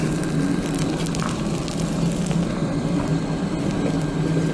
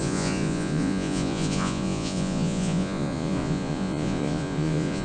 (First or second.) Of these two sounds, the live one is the first